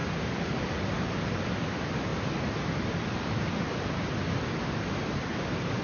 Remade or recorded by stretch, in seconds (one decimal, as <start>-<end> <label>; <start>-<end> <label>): 0.0-5.8 recorded